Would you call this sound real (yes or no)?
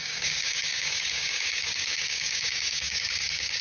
no